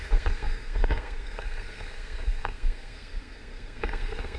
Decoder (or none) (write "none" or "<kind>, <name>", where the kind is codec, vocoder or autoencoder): codec, SNAC